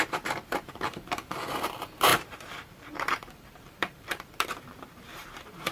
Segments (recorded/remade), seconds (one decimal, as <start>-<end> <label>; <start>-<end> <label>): 0.0-5.7 remade